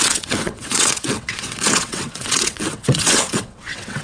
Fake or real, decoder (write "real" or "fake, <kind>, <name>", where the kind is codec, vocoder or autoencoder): fake, vocoder, WaveNeXt